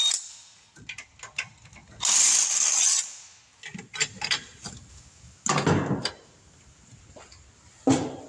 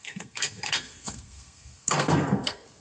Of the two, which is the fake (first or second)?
second